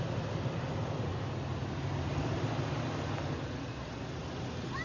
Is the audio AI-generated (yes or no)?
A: no